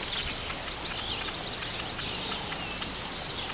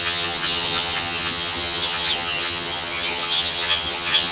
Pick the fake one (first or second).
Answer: second